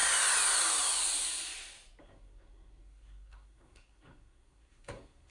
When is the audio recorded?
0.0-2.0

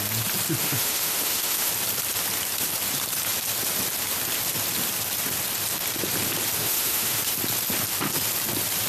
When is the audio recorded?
0.0-0.6; 1.7-6.6; 7.2-8.9

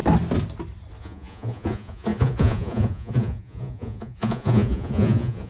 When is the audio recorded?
0.0-1.0

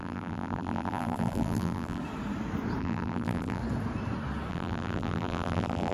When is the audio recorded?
2.0-2.8; 3.6-4.5